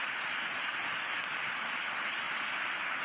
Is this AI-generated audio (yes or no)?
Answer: no